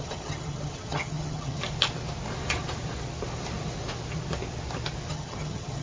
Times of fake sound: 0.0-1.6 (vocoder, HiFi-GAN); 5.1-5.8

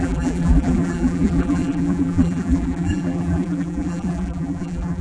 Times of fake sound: 0.0-5.0 (vocoder, BigVGAN v2)

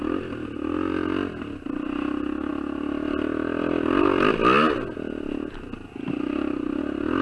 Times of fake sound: none

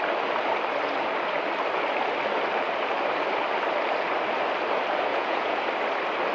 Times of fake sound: 5.1-5.7 (vocoder, Vocos)

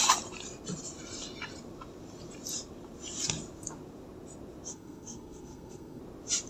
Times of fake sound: 4.7-6.0 (codec, SNAC)

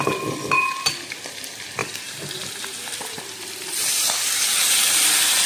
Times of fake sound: 1.8-5.1 (vocoder, BigVGAN v2)

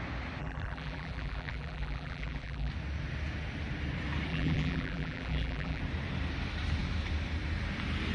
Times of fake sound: 0.4-2.7 (vocoder, BigVGAN v2); 4.3-5.8